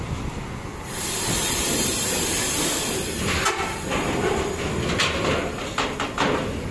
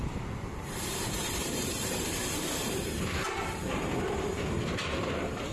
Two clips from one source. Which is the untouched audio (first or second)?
first